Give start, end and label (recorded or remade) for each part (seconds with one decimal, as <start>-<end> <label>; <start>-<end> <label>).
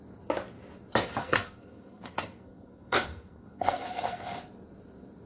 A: 0.0-1.2 recorded; 1.2-4.4 remade; 4.4-5.3 recorded